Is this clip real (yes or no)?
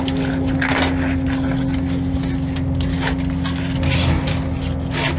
yes